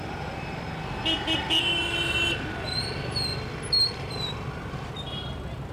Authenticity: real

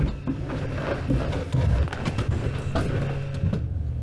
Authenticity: real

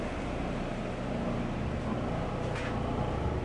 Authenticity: real